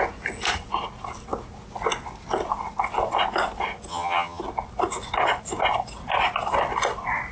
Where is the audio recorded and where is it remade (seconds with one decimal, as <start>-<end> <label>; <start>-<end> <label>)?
0.0-3.9 recorded; 3.9-4.4 remade; 4.4-7.3 recorded